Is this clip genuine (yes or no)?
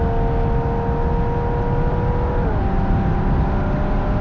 yes